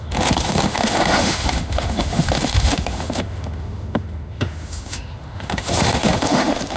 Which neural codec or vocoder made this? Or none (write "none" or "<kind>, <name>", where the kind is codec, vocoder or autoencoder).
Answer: autoencoder, DAC-VAE